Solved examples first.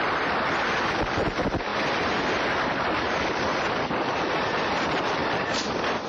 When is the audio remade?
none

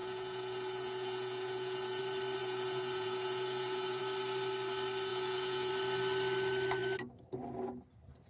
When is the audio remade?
0.0-2.0 (vocoder, Vocos); 2.4-4.0; 5.1-5.7